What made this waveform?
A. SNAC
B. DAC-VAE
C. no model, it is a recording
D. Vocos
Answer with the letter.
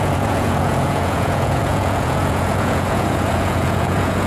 D